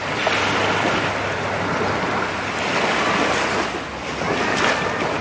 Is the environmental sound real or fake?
real